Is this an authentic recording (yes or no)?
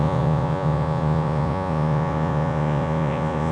no